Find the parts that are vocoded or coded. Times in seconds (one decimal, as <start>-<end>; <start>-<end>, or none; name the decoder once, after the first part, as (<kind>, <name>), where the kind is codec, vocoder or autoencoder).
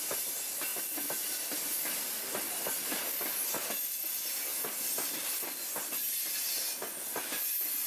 none